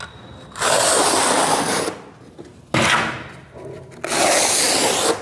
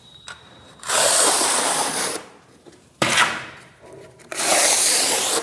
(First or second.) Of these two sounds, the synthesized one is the second